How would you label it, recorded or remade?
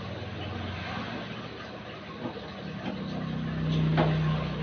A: recorded